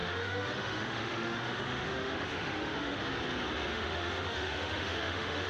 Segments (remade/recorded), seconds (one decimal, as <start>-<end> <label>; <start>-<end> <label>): 0.0-3.0 remade; 3.0-3.7 recorded; 3.7-5.5 remade